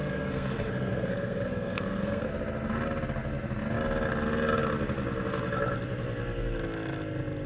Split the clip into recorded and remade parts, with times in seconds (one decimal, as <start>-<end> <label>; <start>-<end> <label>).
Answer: 0.0-2.3 remade; 2.3-7.5 recorded